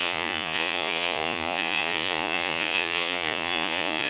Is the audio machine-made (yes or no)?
yes